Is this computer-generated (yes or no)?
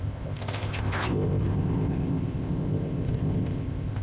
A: yes